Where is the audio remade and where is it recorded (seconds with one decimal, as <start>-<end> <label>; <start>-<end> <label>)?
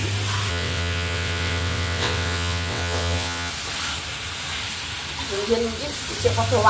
0.0-0.5 recorded; 0.5-3.5 remade; 3.5-6.7 recorded